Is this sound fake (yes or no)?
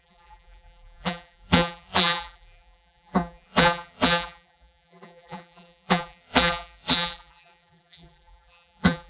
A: yes